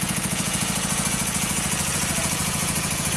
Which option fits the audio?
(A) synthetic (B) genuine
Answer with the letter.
A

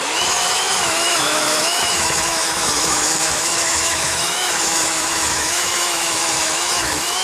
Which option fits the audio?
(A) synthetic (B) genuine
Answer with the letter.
A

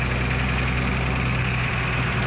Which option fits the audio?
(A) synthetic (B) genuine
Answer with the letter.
B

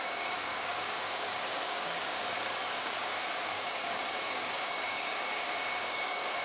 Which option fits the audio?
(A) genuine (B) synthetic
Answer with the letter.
B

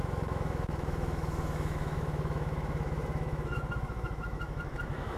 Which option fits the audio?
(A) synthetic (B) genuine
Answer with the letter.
A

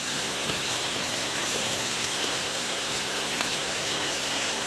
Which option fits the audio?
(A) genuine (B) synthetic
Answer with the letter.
B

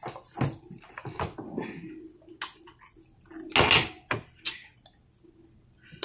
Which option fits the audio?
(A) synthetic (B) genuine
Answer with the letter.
B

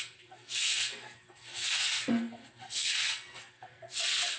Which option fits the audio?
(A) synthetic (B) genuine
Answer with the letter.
A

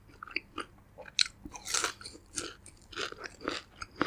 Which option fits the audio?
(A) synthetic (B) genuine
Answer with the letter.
B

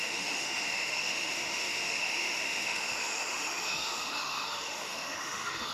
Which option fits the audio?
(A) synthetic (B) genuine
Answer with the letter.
A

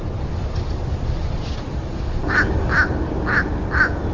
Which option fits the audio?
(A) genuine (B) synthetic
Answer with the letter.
A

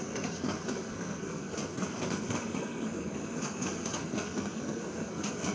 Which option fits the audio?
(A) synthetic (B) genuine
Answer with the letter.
A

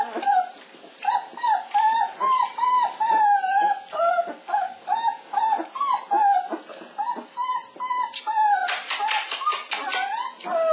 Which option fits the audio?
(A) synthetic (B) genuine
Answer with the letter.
B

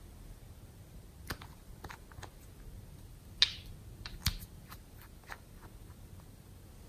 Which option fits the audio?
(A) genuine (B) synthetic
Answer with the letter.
A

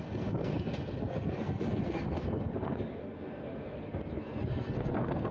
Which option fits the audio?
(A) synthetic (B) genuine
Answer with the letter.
A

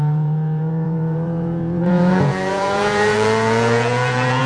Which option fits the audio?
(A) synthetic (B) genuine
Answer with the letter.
A